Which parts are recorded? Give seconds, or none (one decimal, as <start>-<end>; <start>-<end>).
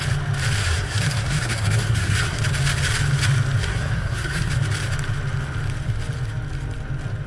0.0-0.6; 2.4-3.6; 4.5-7.3